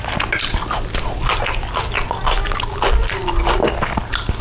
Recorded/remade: recorded